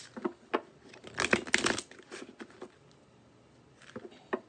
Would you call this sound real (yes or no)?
yes